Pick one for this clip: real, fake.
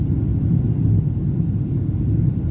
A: fake